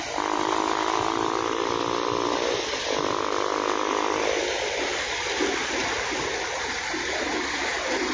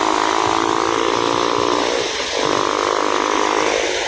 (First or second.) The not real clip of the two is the first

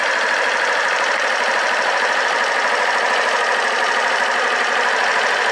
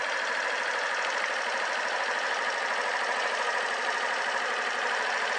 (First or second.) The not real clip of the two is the first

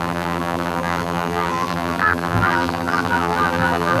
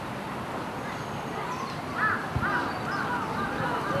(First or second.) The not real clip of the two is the first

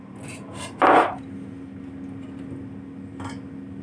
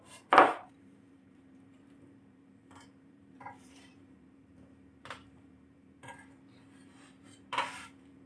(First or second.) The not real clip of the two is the second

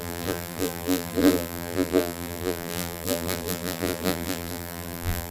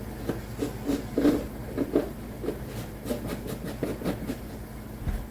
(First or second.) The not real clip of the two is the first